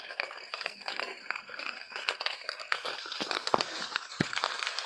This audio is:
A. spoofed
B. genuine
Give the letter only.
A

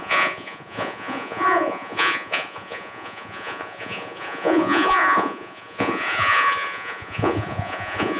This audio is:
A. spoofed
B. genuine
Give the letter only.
A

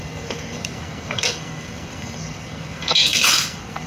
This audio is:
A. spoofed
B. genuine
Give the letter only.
A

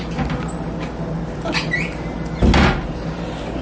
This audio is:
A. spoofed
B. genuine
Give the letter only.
B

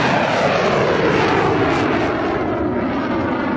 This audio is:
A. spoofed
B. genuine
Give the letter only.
B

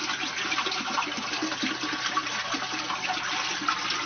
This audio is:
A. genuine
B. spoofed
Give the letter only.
B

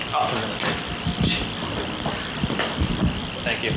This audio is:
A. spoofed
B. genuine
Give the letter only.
B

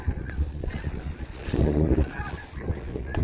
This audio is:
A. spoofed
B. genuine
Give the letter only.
A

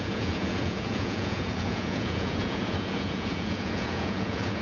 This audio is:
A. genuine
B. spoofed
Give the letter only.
B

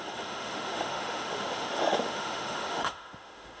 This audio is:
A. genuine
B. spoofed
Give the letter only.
B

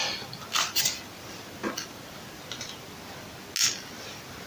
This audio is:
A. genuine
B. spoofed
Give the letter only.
A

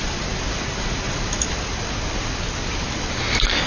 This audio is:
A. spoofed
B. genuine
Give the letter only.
B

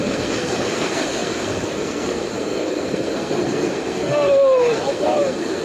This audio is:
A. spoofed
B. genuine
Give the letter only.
A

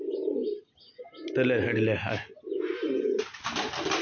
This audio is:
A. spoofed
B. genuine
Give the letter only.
B